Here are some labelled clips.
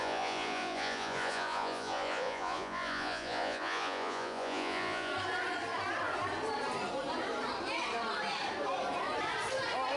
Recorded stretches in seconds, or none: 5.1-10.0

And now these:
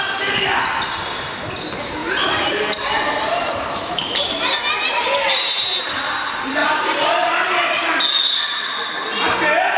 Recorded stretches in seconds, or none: 0.0-2.0; 4.3-6.6; 8.0-9.8

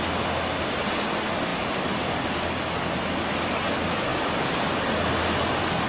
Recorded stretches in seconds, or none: 0.0-5.9